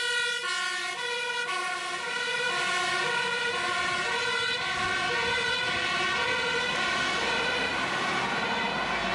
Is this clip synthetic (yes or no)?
no